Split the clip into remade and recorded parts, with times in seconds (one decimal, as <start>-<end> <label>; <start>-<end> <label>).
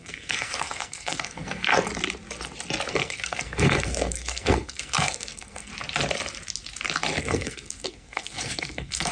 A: 0.0-1.7 remade; 1.7-2.9 recorded; 2.9-5.7 remade; 5.7-7.2 recorded; 7.2-9.1 remade